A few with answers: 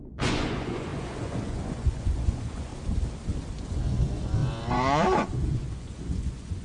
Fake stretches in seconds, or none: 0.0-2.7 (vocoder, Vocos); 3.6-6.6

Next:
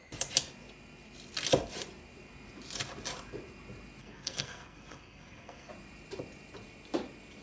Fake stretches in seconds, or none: 4.0-5.7 (codec, SNAC)

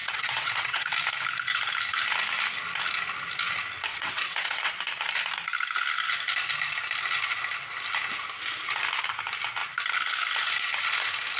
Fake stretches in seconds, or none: 0.0-0.9 (vocoder, WaveNeXt); 3.9-4.7

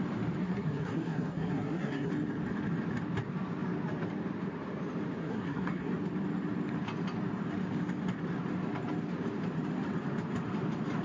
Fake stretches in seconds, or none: 0.4-2.1 (codec, SNAC); 5.2-5.9

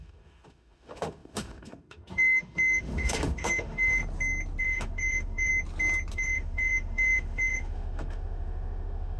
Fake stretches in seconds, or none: 0.0-4.0 (autoencoder, DAC-VAE); 4.6-5.5; 6.1-9.2

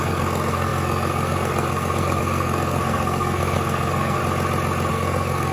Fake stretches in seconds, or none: 0.0-4.2 (codec, SNAC); 4.9-5.5